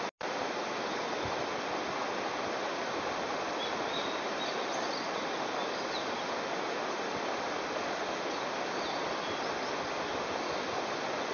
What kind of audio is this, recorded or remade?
recorded